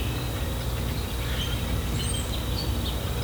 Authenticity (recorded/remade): recorded